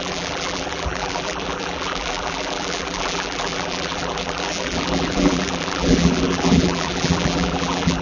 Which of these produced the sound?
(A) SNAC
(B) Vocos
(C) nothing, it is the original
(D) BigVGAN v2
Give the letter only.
D